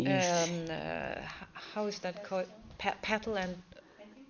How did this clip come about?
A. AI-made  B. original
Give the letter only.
B